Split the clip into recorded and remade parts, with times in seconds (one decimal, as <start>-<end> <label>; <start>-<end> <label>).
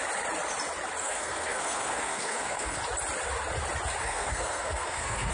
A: 0.0-1.0 recorded; 1.0-2.8 remade; 2.8-4.0 recorded; 4.0-5.3 remade